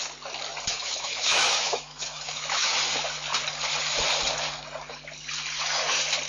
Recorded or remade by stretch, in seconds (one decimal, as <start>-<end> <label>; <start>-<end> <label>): 0.0-0.7 recorded; 0.7-2.8 remade; 2.8-6.3 recorded